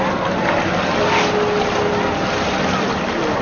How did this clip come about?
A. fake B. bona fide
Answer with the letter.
B